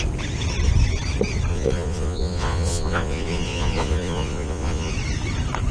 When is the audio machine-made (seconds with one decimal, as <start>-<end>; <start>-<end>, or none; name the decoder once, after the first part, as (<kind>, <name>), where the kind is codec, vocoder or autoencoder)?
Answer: 1.5-4.9 (vocoder, Vocos)